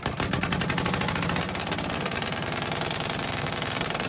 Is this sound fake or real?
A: real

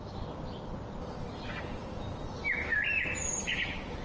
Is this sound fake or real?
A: real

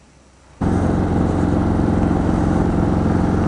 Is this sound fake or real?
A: real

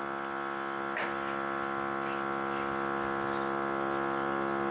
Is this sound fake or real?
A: real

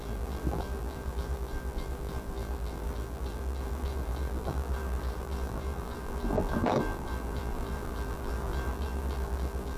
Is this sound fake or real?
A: fake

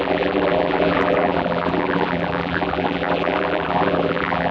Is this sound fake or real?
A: fake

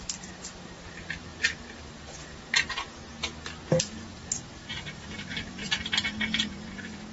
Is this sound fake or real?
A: real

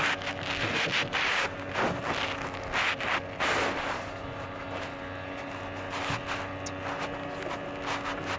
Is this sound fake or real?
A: real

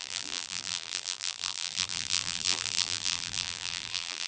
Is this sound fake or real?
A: fake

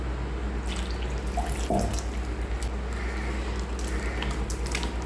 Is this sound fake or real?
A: real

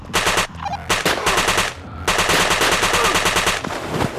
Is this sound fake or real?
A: real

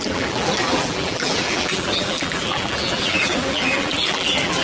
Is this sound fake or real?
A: fake